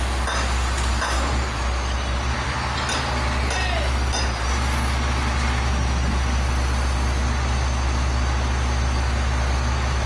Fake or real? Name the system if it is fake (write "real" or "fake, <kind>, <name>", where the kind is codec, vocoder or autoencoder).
real